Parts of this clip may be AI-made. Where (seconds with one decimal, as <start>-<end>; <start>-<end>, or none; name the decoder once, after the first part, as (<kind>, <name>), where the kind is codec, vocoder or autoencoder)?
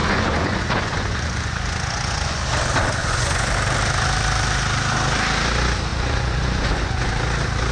0.0-2.4 (vocoder, Vocos); 3.0-3.5; 5.9-7.1